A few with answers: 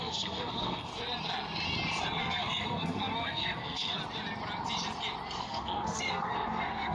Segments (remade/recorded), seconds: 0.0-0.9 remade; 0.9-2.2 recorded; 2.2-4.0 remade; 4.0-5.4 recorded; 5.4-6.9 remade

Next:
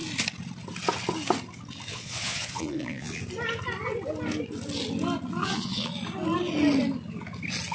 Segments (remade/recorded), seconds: 0.0-1.9 recorded; 1.9-3.2 remade; 3.2-5.4 recorded; 5.4-5.9 remade; 5.9-7.7 recorded

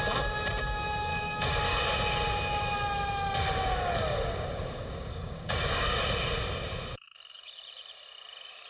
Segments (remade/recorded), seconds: 0.0-1.1 recorded; 1.1-1.8 remade; 1.8-4.0 recorded; 4.0-6.0 remade; 6.0-8.7 recorded

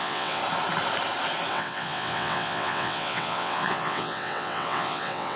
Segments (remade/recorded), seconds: 0.0-0.4 remade; 0.4-1.5 recorded; 1.5-5.4 remade

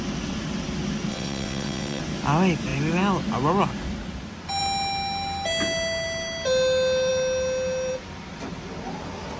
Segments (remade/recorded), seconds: 0.0-1.1 recorded; 1.1-2.0 remade; 2.0-9.4 recorded